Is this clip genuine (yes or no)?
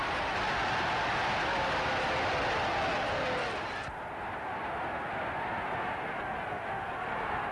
yes